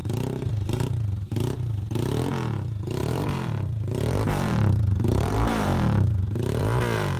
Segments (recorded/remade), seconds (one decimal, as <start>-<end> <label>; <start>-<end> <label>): 0.0-3.0 recorded; 3.0-6.6 remade; 6.6-7.2 recorded